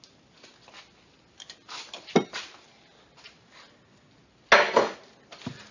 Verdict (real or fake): real